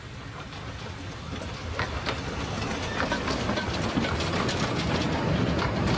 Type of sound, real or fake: fake